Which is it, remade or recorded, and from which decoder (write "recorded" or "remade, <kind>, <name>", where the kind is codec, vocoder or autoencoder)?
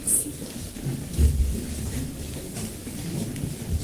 remade, codec, DAC